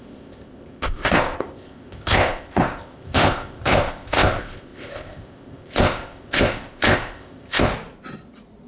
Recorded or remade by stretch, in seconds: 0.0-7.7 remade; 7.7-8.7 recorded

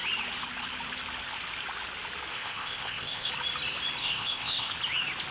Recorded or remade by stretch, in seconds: 0.0-2.3 recorded; 2.3-3.3 remade; 3.3-4.0 recorded; 4.0-4.7 remade; 4.7-5.3 recorded